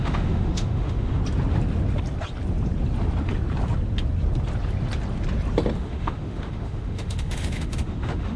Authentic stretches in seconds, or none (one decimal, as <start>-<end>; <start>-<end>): 1.2-5.7